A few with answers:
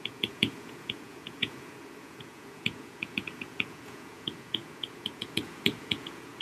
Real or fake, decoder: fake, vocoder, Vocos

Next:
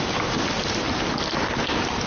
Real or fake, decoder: real